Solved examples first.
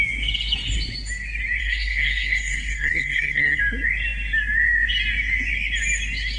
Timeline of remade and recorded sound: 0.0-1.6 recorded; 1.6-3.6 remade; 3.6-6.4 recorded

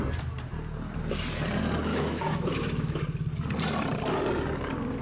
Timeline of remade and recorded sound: 0.0-1.9 recorded; 1.9-3.0 remade; 3.0-5.0 recorded

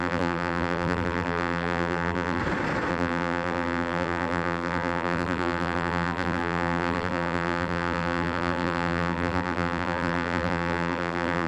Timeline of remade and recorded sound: 0.0-2.4 remade; 2.4-2.9 recorded; 2.9-11.5 remade